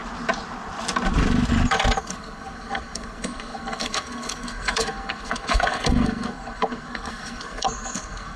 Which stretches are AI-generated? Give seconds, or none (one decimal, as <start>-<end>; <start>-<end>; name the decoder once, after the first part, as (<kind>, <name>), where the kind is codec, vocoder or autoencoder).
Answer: 2.0-8.4 (codec, SNAC)